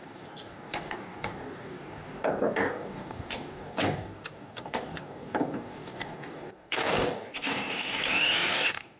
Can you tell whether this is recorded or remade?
remade